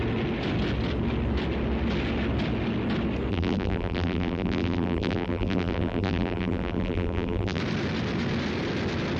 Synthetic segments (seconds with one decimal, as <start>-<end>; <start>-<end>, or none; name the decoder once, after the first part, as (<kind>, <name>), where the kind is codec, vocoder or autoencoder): 3.3-7.6 (vocoder, BigVGAN v2)